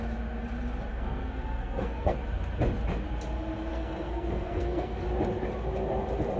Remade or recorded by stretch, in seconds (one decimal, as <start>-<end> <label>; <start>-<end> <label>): 0.0-0.9 recorded; 0.9-2.2 remade; 2.2-3.7 recorded; 3.7-5.0 remade; 5.0-6.4 recorded